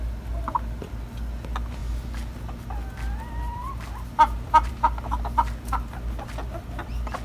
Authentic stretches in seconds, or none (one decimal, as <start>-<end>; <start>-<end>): 0.0-7.2